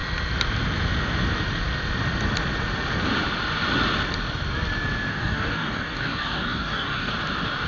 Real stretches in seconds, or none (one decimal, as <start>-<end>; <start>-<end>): 0.0-5.1; 7.1-7.7